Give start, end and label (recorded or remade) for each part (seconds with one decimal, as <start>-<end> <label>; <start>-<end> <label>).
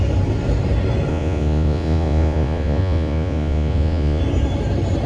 0.0-1.1 recorded; 1.1-4.2 remade; 4.2-5.1 recorded